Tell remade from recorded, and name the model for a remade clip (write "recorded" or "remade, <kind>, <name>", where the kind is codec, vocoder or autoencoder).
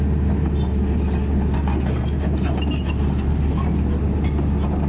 recorded